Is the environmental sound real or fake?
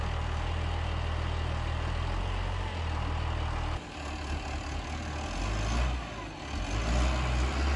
real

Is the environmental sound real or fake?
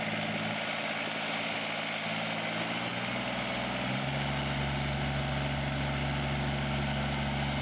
real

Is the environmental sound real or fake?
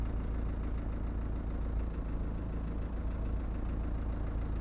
real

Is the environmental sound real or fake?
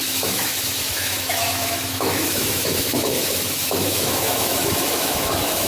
fake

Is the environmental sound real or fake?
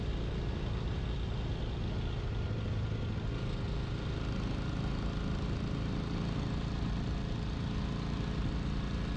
real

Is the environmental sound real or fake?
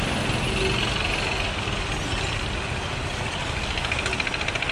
real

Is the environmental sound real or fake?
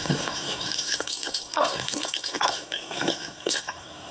fake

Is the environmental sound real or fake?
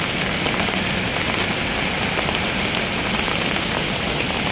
real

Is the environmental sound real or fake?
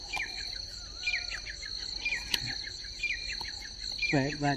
real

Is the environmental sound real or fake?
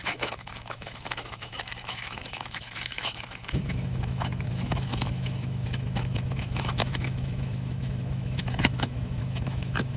fake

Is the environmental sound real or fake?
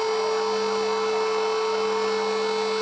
real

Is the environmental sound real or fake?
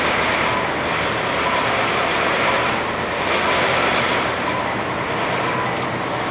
real